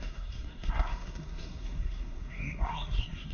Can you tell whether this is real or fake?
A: fake